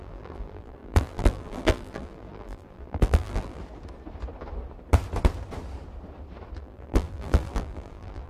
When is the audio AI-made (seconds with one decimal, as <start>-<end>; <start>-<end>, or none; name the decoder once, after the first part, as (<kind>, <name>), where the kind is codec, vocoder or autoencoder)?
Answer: 0.0-3.6 (vocoder, BigVGAN v2); 6.6-8.3